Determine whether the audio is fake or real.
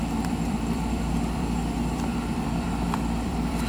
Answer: fake